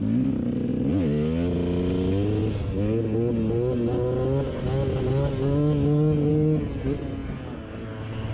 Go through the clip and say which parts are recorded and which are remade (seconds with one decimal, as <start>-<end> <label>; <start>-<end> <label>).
0.0-8.3 recorded